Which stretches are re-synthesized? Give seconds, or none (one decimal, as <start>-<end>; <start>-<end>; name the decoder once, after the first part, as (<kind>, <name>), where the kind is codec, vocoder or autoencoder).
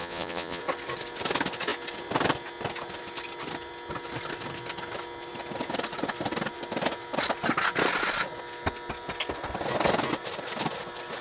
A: 0.0-0.6 (vocoder, Vocos)